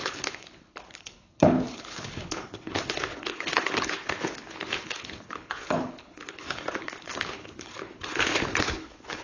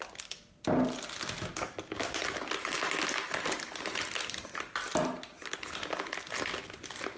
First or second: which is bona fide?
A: second